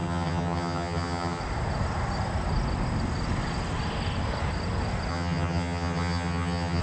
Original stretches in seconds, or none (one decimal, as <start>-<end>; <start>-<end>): 1.4-5.1